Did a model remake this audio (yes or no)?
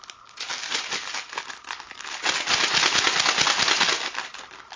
no